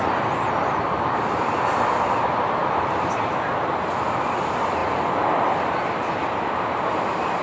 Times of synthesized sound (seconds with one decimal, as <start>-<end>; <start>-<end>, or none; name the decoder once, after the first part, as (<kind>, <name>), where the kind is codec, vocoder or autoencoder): none